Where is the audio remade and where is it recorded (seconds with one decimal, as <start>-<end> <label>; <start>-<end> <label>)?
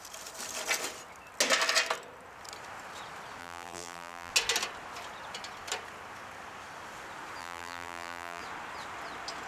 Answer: 0.0-3.4 recorded; 3.4-4.3 remade; 4.3-7.4 recorded; 7.4-8.4 remade; 8.4-9.5 recorded